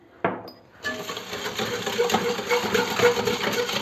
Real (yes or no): yes